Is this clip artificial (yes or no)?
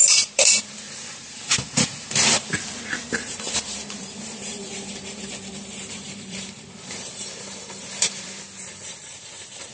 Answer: yes